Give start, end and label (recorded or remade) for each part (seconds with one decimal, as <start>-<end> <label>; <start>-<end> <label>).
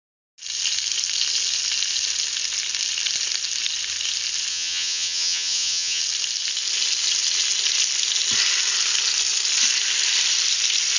0.0-4.5 recorded; 4.5-6.0 remade; 6.0-11.0 recorded